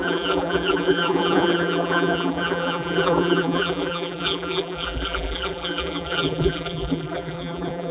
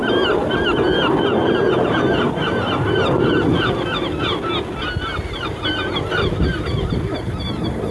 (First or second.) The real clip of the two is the second